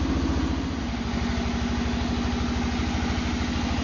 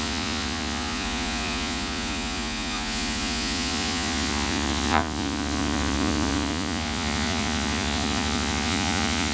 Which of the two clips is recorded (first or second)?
first